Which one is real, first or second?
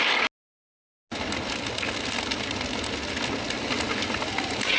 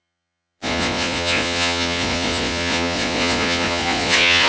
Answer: first